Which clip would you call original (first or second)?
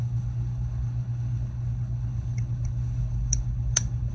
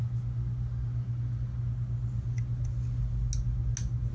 second